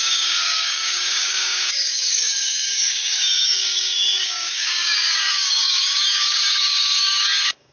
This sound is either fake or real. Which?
fake